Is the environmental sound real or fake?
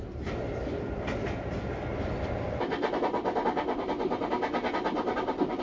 real